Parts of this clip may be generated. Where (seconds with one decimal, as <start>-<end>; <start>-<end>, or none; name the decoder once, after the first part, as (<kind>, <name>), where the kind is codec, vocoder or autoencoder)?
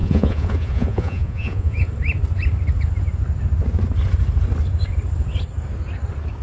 0.0-1.9 (vocoder, Vocos)